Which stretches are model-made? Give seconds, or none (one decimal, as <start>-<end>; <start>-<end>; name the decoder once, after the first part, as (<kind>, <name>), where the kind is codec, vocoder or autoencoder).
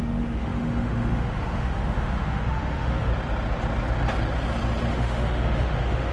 0.0-3.1 (autoencoder, DAC-VAE); 4.9-6.1